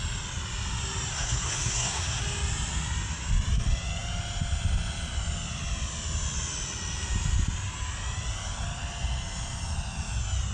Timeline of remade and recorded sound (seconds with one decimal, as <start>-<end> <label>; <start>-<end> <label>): 0.0-1.1 recorded; 1.1-2.2 remade; 2.2-10.5 recorded